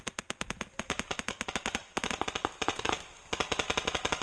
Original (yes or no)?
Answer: yes